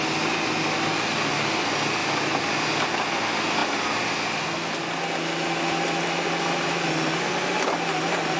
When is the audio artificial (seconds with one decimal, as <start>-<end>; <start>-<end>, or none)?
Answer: 2.0-2.7